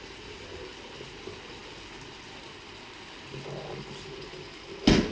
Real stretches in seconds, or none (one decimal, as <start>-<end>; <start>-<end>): 0.0-5.1